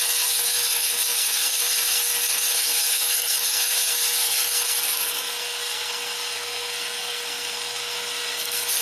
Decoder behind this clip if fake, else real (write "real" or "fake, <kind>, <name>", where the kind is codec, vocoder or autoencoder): fake, codec, SNAC